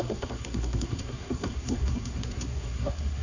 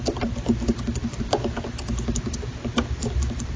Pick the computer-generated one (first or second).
first